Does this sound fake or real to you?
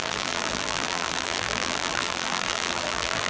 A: fake